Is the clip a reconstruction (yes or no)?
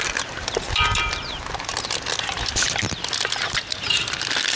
yes